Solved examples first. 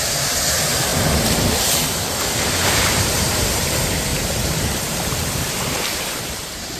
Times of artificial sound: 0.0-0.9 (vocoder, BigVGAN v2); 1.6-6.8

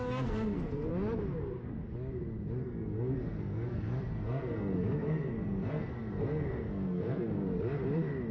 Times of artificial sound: 0.0-0.9 (codec, SNAC); 2.6-7.4

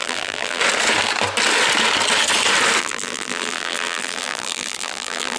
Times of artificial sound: 0.0-0.6 (vocoder, BigVGAN v2); 2.8-5.4